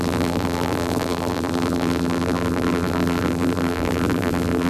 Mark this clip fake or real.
fake